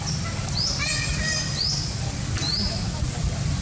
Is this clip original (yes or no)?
yes